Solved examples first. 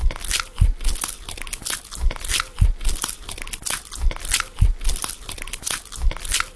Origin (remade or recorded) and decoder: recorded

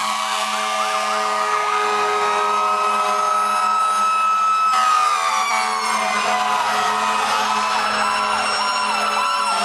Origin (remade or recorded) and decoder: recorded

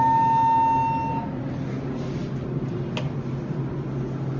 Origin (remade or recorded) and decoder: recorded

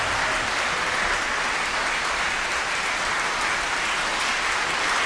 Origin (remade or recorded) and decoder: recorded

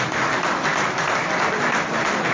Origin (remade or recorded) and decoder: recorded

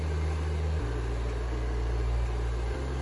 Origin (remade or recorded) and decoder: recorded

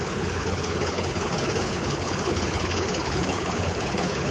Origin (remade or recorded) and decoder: remade, codec, HILCodec